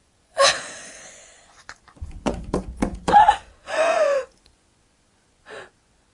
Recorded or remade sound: remade